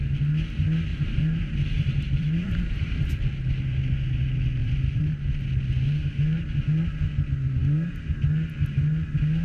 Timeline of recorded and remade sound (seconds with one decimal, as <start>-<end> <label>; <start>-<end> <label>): 0.0-0.9 recorded; 0.9-3.1 remade; 3.1-4.6 recorded; 4.6-5.2 remade; 5.2-9.4 recorded